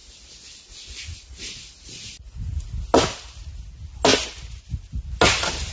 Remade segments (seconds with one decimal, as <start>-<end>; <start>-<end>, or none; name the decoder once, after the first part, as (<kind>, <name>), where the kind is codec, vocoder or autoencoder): none